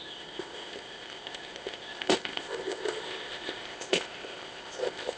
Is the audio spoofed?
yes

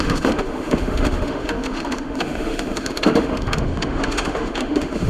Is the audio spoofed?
yes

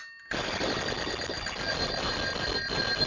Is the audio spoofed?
no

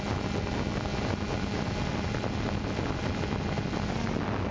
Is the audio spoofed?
no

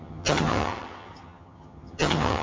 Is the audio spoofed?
yes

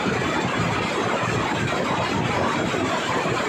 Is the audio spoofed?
yes